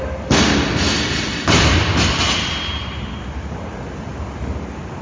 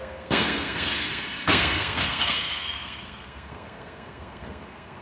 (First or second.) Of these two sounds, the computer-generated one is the second